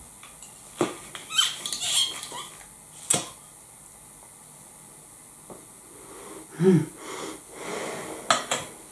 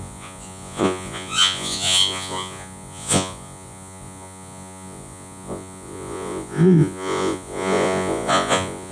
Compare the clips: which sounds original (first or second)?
first